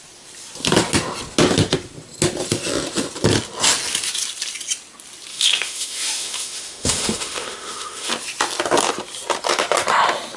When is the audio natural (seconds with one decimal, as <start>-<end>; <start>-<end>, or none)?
0.0-5.3; 8.1-10.4